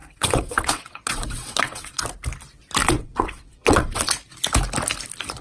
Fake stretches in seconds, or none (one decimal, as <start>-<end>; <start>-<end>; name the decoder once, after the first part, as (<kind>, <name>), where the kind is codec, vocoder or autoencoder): 0.0-2.0 (vocoder, WaveNeXt); 2.8-4.1